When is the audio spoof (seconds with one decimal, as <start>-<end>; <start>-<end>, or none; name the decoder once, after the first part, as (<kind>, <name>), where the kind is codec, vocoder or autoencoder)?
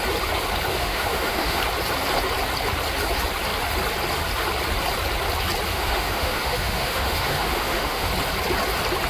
0.7-1.6 (autoencoder, DAC-VAE); 5.7-8.1